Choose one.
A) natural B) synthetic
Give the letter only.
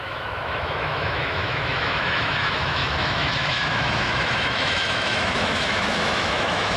B